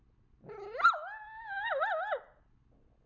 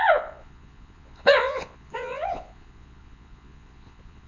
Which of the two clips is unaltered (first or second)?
first